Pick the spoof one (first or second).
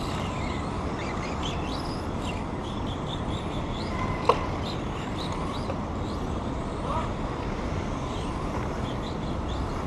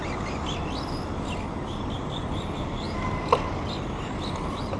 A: first